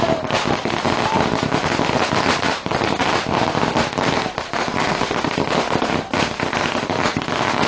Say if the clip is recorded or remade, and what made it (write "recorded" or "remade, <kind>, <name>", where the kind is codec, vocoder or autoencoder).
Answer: recorded